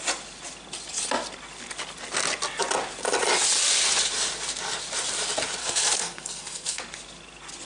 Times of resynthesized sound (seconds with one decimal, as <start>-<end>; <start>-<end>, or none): 5.6-6.8